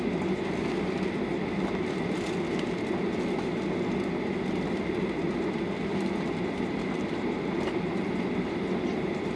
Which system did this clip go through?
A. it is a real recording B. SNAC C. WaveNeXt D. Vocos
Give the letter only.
A